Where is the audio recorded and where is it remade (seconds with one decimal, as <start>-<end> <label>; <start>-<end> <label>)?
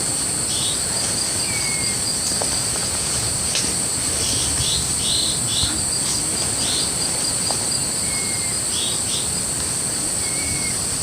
0.0-2.8 recorded; 2.8-3.3 remade; 3.3-11.0 recorded